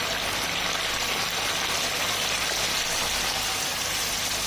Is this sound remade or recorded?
recorded